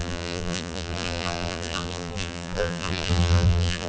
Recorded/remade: remade